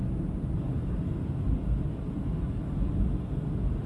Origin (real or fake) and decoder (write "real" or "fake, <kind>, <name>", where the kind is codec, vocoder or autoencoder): real